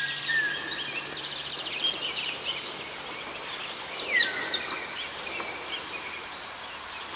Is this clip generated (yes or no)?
no